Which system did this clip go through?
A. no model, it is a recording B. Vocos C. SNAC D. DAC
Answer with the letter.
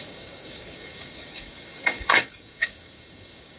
D